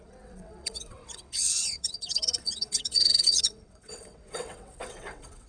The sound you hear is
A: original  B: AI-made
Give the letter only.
B